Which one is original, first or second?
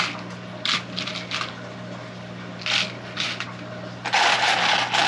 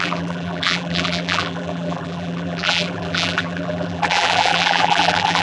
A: first